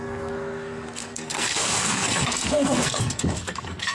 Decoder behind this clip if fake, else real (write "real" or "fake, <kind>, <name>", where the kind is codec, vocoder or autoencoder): fake, codec, SNAC